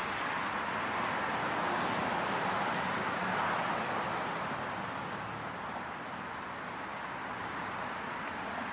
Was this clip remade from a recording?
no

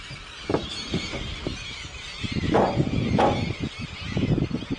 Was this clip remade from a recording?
no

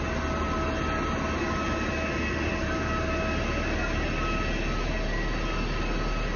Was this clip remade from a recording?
no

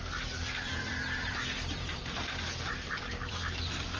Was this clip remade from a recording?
yes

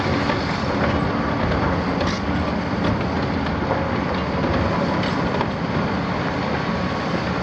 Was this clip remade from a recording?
no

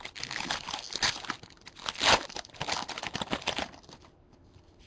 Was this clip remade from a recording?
no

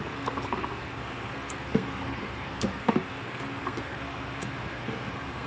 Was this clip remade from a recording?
yes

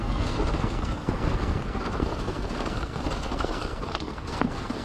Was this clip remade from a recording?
yes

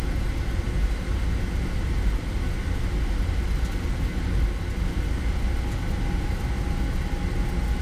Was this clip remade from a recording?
no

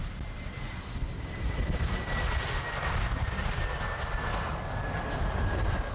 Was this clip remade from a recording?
no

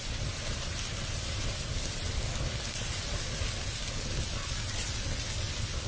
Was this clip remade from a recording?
no